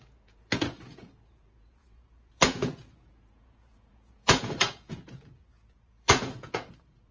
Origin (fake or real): fake